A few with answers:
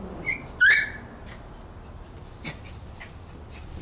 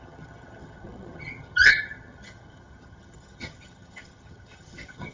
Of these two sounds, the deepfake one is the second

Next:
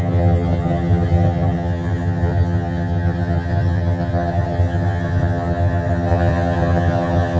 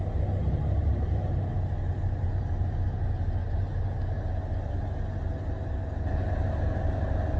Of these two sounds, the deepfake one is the first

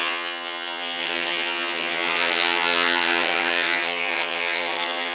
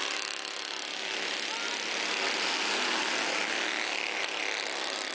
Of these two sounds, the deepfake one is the first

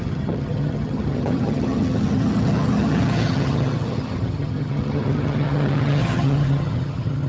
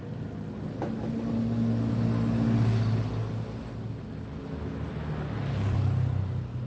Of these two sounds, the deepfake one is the first